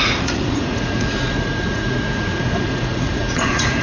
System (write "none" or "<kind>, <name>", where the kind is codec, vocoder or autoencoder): vocoder, Vocos